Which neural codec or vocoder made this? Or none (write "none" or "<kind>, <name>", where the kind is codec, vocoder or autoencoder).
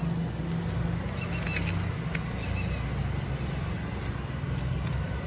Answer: none